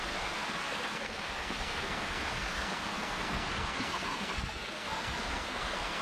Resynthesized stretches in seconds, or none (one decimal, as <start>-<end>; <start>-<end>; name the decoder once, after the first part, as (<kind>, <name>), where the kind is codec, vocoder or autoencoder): 0.0-6.0 (codec, SNAC)